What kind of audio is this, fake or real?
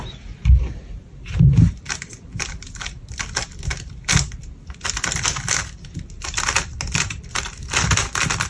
real